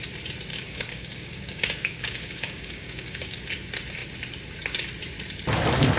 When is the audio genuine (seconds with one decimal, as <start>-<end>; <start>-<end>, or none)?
0.0-0.5; 3.4-6.0